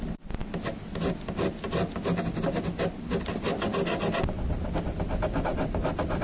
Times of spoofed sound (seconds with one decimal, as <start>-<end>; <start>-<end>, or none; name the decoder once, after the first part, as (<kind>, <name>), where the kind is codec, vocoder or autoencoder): none